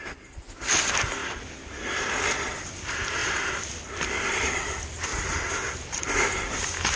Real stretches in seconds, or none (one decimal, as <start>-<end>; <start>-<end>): 3.2-4.2; 5.1-6.1